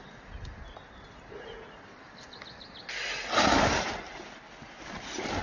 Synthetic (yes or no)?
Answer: no